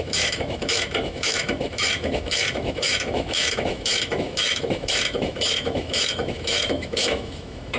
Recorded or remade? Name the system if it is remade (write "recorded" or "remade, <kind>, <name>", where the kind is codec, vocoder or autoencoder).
remade, autoencoder, DAC-VAE